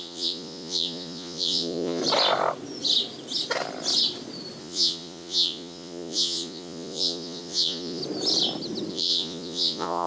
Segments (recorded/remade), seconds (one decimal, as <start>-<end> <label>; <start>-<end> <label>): 0.0-2.0 remade; 2.0-4.6 recorded; 4.6-8.0 remade; 8.0-8.9 recorded; 8.9-10.1 remade